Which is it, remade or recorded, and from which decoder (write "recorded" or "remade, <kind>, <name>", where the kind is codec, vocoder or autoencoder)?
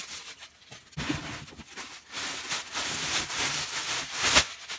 recorded